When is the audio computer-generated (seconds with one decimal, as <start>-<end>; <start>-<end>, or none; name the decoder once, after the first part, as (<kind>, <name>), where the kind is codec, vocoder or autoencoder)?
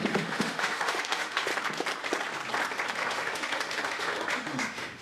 0.0-1.5 (autoencoder, DAC-VAE); 2.9-5.0